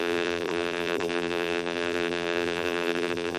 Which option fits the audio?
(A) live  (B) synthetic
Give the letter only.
B